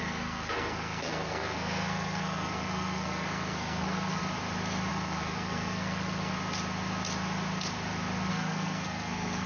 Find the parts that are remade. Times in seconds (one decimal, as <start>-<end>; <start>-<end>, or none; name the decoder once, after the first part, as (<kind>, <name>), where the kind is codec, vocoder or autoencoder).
0.0-4.2 (codec, SNAC); 4.9-6.3; 8.3-9.5